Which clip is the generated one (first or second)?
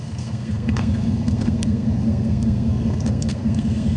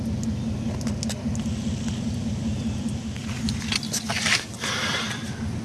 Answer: first